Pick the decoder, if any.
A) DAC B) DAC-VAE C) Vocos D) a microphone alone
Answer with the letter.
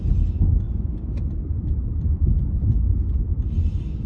D